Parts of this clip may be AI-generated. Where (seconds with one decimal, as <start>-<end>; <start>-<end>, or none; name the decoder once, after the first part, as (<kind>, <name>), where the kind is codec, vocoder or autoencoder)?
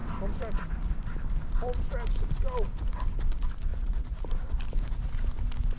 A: 3.7-4.2 (vocoder, Vocos)